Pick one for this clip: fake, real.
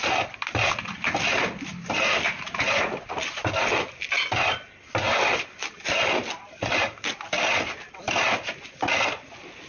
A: real